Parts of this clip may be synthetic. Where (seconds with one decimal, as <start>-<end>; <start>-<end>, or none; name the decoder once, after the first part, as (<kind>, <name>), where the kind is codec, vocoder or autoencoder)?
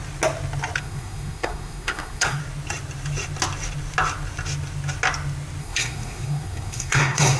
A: 0.8-2.4 (codec, SNAC); 5.6-7.4